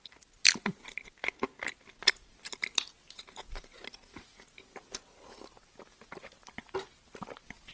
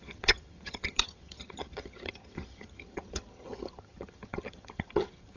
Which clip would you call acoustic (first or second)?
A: first